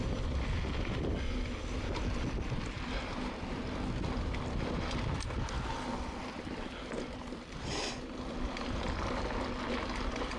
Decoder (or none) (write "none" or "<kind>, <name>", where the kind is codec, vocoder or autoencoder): none